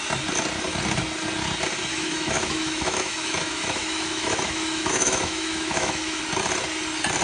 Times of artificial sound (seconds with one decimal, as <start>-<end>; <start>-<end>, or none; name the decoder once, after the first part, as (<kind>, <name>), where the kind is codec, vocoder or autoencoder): 1.9-6.2 (autoencoder, DAC-VAE)